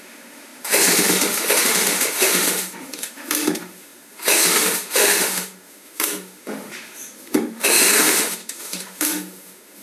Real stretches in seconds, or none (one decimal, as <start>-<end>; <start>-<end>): none